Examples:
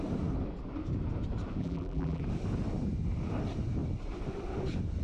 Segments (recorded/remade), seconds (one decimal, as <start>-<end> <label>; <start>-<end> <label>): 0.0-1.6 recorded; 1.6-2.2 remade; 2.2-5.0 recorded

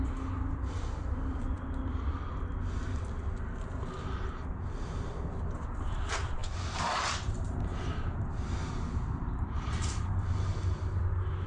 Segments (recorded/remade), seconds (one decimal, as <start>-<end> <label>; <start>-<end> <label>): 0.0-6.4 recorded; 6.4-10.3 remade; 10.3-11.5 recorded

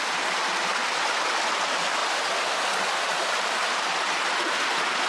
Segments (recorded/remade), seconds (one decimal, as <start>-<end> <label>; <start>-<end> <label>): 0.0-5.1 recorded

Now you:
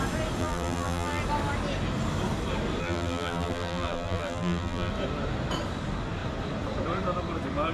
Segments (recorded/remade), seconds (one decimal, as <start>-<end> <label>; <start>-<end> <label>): 0.0-0.4 recorded; 0.4-1.2 remade; 1.2-2.8 recorded; 2.8-4.9 remade; 4.9-7.7 recorded

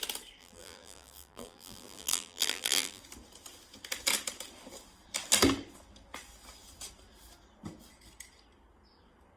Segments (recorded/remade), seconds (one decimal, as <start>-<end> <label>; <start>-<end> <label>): 0.0-0.4 recorded; 0.4-3.0 remade; 3.0-9.4 recorded

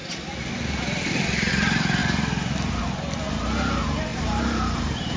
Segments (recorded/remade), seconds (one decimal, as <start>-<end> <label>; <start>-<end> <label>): 0.0-4.1 recorded; 4.1-5.2 remade

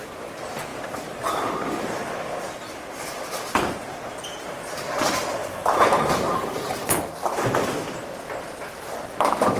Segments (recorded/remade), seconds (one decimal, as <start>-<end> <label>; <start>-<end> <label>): 0.0-0.7 recorded; 0.7-4.1 remade; 4.1-5.4 recorded; 5.4-6.9 remade; 6.9-9.6 recorded

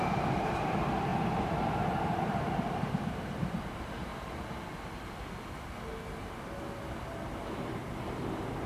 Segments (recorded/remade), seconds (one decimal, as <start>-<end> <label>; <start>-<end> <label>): 0.0-4.1 remade; 4.1-8.7 recorded